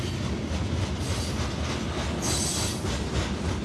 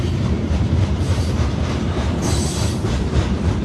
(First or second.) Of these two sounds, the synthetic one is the second